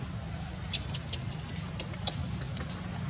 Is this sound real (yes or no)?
yes